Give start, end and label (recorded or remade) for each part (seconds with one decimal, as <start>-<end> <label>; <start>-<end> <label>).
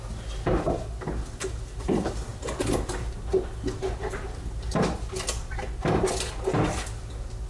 0.0-7.5 recorded